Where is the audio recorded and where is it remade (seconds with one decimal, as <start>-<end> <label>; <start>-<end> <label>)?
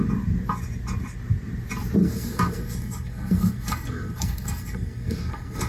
0.0-2.0 recorded; 2.0-5.7 remade